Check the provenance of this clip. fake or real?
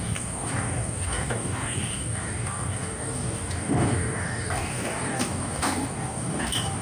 fake